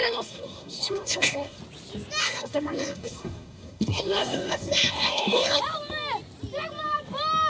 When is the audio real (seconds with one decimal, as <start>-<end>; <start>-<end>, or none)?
1.6-2.2; 5.6-7.5